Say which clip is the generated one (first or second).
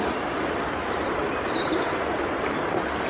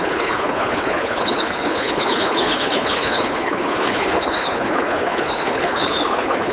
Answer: second